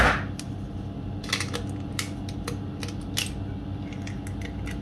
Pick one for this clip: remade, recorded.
recorded